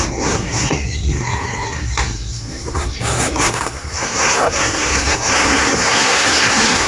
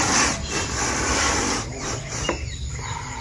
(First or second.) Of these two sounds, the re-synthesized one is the first